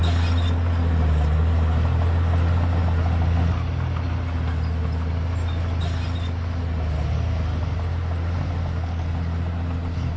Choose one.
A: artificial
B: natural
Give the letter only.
B